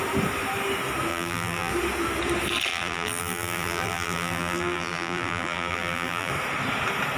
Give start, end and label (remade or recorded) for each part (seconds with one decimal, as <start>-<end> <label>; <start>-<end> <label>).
0.0-1.1 recorded; 1.1-1.7 remade; 1.7-2.7 recorded; 2.7-6.3 remade; 6.3-7.2 recorded